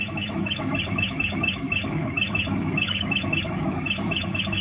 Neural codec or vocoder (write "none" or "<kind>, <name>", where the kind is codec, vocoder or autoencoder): autoencoder, DAC-VAE